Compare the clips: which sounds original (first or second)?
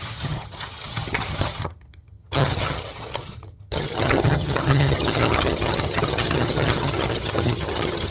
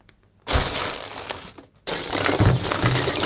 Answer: second